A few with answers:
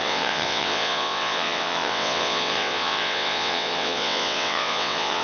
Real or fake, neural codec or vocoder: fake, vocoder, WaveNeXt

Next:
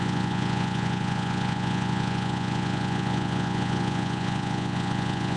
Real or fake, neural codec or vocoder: fake, vocoder, Vocos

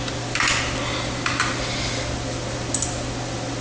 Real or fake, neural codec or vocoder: real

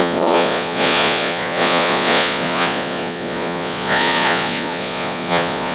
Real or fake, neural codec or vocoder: fake, vocoder, Vocos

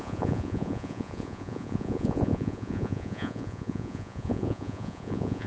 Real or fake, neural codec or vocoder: fake, vocoder, Vocos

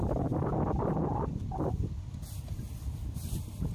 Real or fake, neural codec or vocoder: real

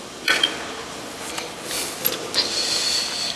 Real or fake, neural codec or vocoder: real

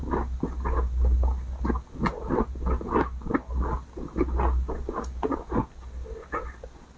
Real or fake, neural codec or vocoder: real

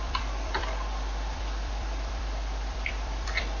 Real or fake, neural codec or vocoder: fake, vocoder, BigVGAN v2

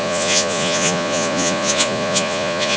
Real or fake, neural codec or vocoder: fake, vocoder, Vocos